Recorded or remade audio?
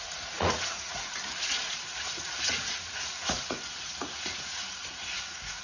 remade